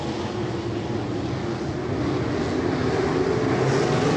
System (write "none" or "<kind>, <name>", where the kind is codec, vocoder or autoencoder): none